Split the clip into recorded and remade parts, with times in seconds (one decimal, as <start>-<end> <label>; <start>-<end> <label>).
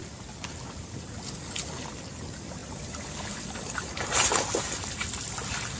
0.0-5.8 recorded